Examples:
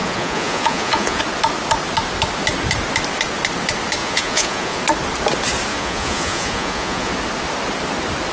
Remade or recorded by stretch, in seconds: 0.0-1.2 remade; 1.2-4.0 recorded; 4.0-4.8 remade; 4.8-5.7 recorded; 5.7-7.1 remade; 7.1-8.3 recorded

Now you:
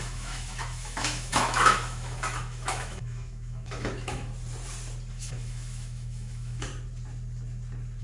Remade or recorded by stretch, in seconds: 0.0-4.3 remade; 4.3-5.1 recorded; 5.1-6.7 remade; 6.7-8.0 recorded

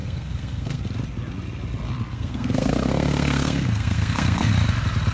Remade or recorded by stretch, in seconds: 0.0-0.8 remade; 0.8-2.1 recorded; 2.1-4.5 remade; 4.5-5.1 recorded

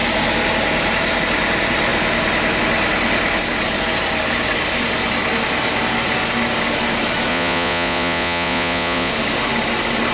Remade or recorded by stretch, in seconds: 0.0-7.3 recorded; 7.3-9.1 remade; 9.1-10.1 recorded

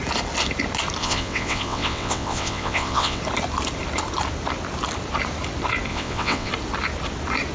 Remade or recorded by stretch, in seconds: 0.0-1.0 recorded; 1.0-3.2 remade; 3.2-5.9 recorded; 5.9-6.5 remade; 6.5-7.5 recorded

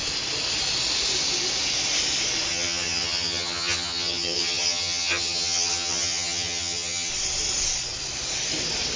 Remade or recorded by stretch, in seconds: 0.0-2.5 recorded; 2.5-7.1 remade; 7.1-9.0 recorded

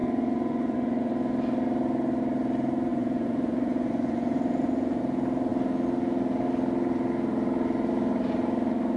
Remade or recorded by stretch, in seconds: 0.0-1.1 remade; 1.1-2.9 recorded; 2.9-5.0 remade; 5.0-9.0 recorded

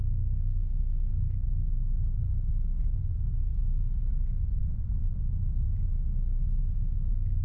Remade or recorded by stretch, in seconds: 0.0-4.6 recorded; 4.6-5.3 remade; 5.3-7.4 recorded